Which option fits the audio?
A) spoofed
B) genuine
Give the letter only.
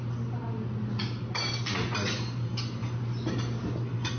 B